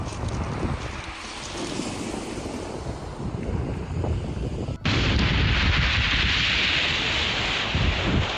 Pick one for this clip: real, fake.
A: real